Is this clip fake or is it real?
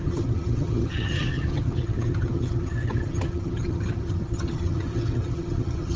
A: fake